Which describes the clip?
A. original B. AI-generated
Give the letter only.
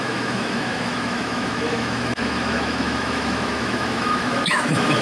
B